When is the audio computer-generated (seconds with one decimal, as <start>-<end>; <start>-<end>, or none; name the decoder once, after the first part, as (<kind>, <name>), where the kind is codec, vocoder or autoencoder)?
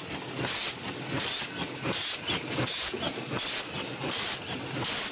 none